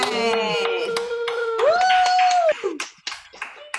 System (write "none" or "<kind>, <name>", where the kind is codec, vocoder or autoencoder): none